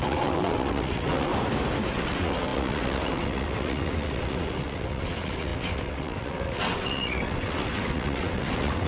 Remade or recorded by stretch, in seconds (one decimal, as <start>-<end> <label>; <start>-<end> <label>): 0.0-1.3 remade; 1.3-1.9 recorded; 1.9-8.9 remade

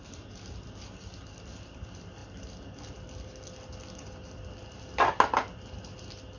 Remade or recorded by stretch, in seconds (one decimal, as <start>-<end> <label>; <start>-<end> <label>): 0.0-6.4 recorded

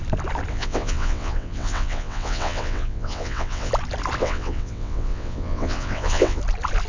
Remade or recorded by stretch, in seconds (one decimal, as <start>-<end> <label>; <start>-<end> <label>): 0.0-0.5 recorded; 0.5-3.7 remade; 3.7-4.2 recorded; 4.2-6.4 remade; 6.4-6.9 recorded

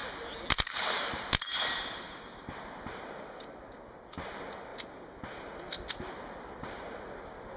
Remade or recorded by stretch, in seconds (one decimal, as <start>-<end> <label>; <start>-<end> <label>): 0.0-7.6 recorded

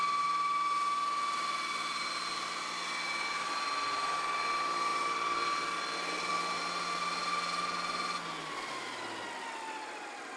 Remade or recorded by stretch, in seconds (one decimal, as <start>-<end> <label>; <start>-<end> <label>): 0.0-10.4 recorded